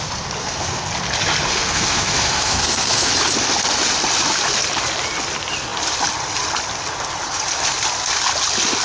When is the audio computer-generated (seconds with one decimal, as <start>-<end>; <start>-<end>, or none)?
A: 0.4-0.9; 1.5-3.1